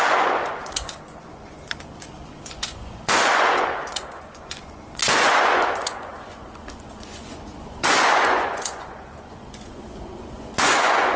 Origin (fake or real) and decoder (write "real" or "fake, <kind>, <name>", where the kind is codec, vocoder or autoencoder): fake, vocoder, Vocos